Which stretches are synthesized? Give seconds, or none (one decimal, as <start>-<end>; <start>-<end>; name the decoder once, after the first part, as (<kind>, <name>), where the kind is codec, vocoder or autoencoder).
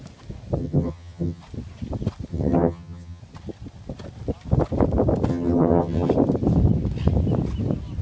0.6-1.4 (vocoder, HiFi-GAN); 2.3-3.2; 5.3-6.1